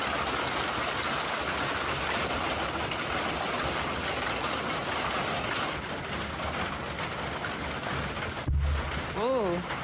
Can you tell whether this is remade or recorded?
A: recorded